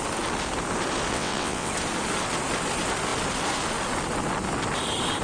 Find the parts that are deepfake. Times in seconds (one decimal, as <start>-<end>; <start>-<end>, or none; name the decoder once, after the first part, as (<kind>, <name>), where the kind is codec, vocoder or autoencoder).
1.1-1.7 (vocoder, WaveNeXt)